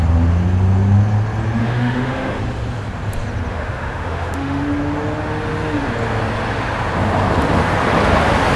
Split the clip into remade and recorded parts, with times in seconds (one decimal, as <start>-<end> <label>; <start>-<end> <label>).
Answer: 0.0-1.6 recorded; 1.6-2.4 remade; 2.4-3.5 recorded; 3.5-4.6 remade; 4.6-8.6 recorded